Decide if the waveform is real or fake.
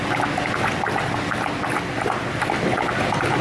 real